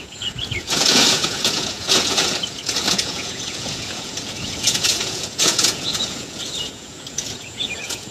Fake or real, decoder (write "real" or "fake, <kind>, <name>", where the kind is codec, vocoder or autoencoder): fake, vocoder, Vocos